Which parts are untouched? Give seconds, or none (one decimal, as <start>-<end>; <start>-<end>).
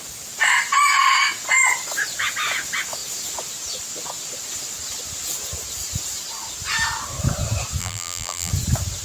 0.0-7.8; 8.5-9.0